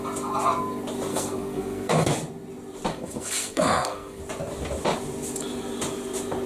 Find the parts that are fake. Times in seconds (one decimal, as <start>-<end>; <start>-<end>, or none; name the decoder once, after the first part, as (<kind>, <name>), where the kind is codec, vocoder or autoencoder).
1.1-2.1 (codec, SNAC); 2.9-4.2